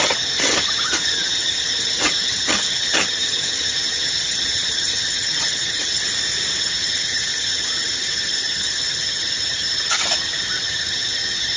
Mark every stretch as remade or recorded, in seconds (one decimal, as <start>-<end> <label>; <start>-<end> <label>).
0.0-6.0 remade; 6.0-6.6 recorded; 6.6-11.6 remade